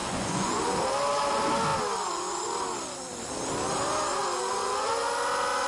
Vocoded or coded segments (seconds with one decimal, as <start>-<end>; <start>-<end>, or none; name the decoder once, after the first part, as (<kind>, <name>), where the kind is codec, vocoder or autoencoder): 0.0-0.6 (vocoder, Vocos); 4.5-5.1